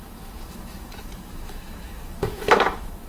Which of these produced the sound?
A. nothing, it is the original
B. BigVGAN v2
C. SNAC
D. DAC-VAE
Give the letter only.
D